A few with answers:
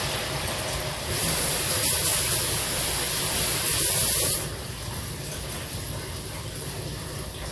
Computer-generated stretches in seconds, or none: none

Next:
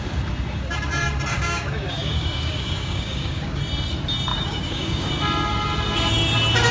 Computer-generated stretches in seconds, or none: 1.3-3.6 (codec, DAC); 4.3-5.1

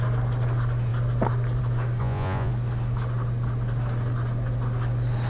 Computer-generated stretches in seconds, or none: 2.0-2.5 (vocoder, Vocos)

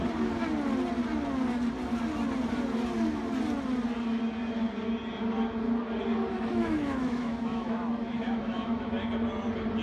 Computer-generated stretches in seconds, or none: 6.5-8.9 (autoencoder, DAC-VAE)

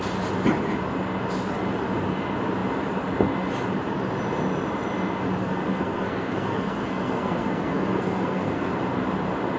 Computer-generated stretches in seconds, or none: 5.4-8.8 (codec, SNAC)

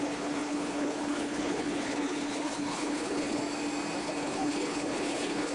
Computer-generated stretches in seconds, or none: 0.0-3.4 (codec, HILCodec); 4.0-5.5